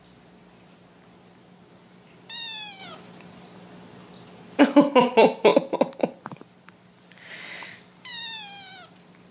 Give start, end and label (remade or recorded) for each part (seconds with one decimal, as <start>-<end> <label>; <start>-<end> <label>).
0.0-9.3 recorded